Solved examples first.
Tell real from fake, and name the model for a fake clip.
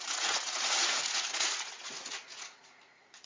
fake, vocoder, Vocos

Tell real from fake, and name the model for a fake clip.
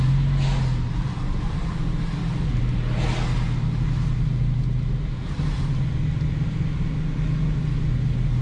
real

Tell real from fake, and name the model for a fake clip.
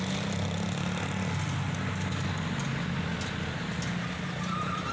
real